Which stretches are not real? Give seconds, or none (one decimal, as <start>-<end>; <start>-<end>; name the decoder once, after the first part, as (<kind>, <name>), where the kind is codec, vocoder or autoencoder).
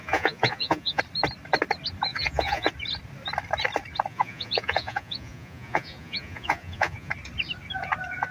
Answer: 0.0-1.0 (vocoder, Vocos); 2.1-2.7; 4.1-7.1